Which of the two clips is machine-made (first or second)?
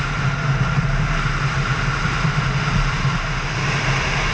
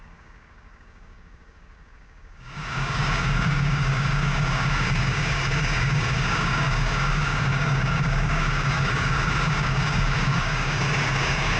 second